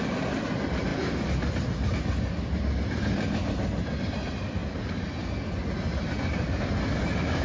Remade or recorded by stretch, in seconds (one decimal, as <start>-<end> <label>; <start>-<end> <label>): 0.0-7.4 recorded